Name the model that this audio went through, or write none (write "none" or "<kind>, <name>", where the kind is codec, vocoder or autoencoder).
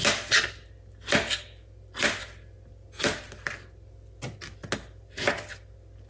none